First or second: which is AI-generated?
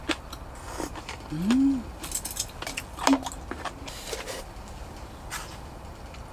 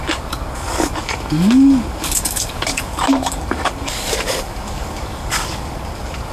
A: second